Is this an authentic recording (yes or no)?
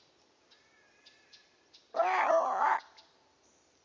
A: no